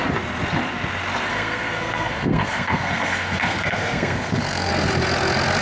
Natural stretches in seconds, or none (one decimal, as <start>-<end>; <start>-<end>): 0.0-1.3; 4.7-5.6